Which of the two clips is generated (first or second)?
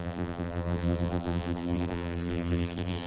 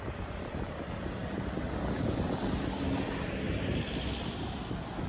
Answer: first